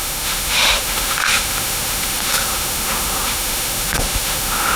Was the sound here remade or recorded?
remade